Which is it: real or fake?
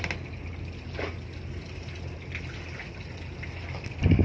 real